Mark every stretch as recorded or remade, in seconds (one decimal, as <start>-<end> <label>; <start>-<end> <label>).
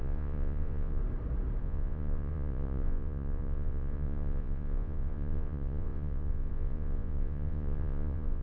0.0-1.0 remade; 1.0-1.6 recorded; 1.6-8.4 remade